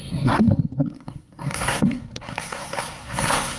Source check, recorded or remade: remade